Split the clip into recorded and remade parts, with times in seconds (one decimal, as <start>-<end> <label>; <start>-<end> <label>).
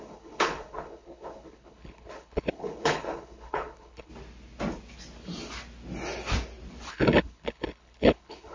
0.0-4.1 remade; 4.1-6.9 recorded; 6.9-8.5 remade